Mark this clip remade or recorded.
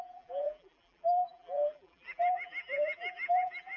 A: remade